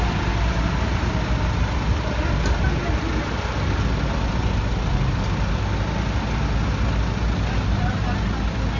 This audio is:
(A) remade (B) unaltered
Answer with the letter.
B